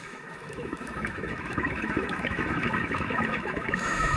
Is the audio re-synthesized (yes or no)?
yes